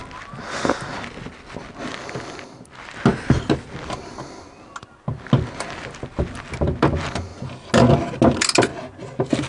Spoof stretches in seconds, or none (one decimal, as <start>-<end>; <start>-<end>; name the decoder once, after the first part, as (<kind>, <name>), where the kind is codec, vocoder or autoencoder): none